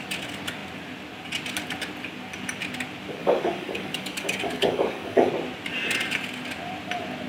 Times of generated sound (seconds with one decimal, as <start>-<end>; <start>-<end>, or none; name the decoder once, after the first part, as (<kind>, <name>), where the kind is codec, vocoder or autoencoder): 3.2-5.3 (codec, DAC)